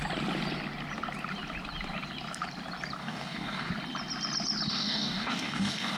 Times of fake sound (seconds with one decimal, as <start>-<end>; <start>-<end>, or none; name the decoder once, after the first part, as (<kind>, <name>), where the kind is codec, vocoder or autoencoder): 3.0-3.7 (codec, DAC); 4.7-6.0